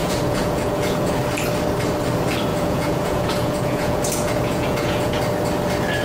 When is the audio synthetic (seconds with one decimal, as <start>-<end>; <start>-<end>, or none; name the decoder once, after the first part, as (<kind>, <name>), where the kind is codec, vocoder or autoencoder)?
0.0-1.1 (vocoder, Vocos); 2.5-5.2